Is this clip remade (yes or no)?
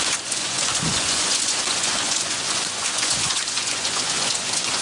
yes